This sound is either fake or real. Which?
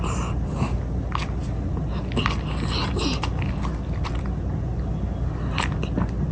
real